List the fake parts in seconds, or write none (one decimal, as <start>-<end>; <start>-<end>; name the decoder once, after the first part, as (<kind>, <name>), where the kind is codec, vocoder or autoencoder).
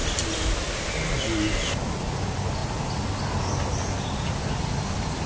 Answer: none